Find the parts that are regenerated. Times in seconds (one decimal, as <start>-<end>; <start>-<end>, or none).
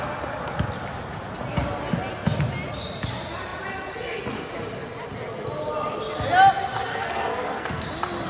6.9-7.9